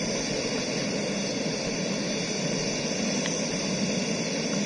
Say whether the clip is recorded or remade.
recorded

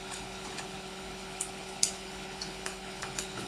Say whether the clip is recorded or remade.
remade